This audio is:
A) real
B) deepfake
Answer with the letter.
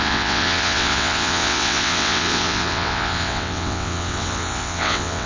B